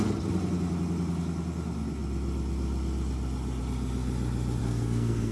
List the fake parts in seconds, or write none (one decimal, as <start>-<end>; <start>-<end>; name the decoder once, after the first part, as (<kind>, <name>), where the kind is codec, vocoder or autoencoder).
4.6-5.3 (codec, SNAC)